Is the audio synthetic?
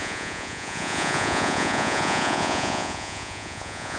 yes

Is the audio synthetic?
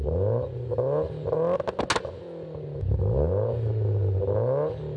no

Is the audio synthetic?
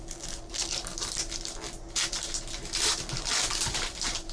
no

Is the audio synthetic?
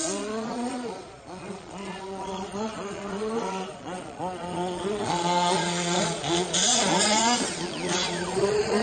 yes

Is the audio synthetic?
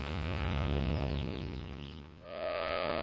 yes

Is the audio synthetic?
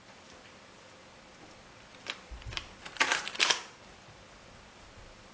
yes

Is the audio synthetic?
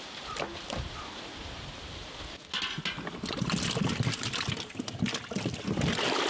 no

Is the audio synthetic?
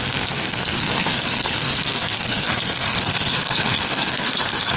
yes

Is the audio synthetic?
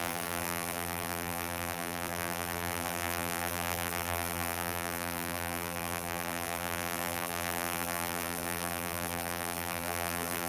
yes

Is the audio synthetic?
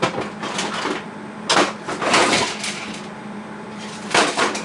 no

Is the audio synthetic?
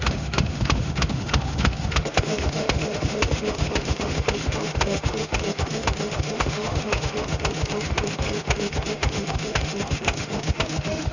yes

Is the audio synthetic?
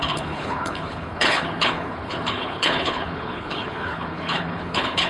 yes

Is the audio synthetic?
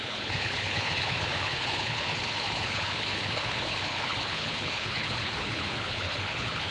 yes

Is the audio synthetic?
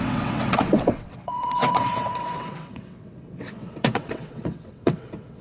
yes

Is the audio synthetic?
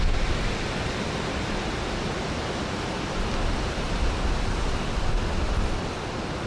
no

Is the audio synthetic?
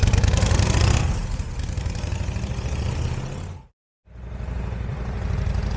no